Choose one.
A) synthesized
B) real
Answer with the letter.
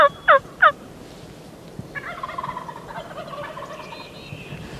B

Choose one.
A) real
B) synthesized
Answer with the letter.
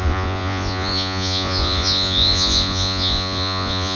B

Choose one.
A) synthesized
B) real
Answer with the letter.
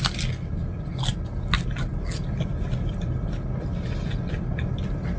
B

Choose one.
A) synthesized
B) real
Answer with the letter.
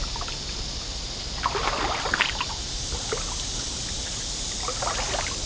B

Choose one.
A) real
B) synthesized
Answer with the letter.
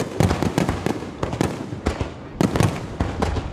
A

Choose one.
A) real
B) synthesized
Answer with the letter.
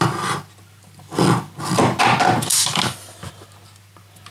A